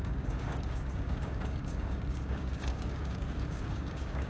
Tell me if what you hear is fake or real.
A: fake